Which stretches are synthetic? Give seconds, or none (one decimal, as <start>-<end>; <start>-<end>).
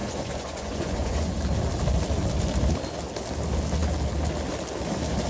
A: 0.0-1.4